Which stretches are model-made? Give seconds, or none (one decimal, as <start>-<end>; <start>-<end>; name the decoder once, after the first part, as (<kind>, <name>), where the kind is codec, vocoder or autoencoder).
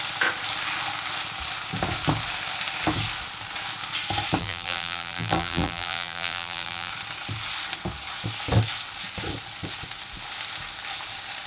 4.4-6.9 (vocoder, BigVGAN v2)